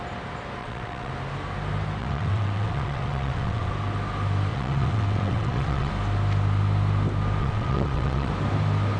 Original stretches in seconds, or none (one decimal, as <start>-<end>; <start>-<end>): 0.0-0.6; 1.1-2.0; 3.7-4.5; 5.9-7.4; 8.3-9.0

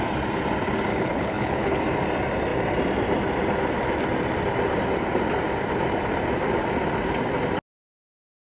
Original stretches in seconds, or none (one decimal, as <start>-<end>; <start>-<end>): 0.0-0.9; 1.8-8.4